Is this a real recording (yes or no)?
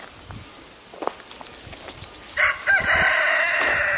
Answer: yes